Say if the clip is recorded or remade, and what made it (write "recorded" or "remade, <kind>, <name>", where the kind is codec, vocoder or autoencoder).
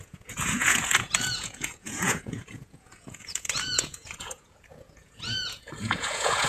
remade, vocoder, Vocos